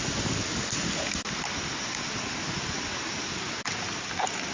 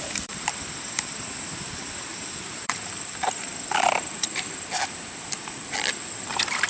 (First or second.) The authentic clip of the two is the first